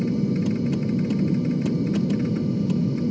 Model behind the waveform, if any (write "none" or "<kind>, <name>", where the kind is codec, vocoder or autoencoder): none